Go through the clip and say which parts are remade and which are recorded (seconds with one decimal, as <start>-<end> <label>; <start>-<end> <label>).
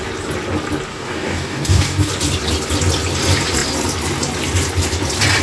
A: 0.0-0.9 recorded; 0.9-2.1 remade; 2.1-5.4 recorded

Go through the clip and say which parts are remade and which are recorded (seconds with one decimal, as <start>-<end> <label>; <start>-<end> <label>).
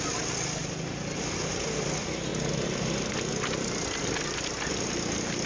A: 0.0-5.5 recorded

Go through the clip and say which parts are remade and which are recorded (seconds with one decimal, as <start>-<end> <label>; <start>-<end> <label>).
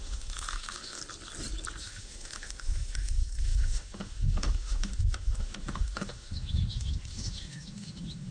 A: 0.0-1.0 remade; 1.0-1.8 recorded; 1.8-8.3 remade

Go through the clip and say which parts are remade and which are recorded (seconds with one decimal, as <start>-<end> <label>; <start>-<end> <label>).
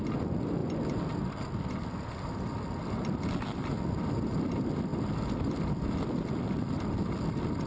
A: 0.0-7.7 recorded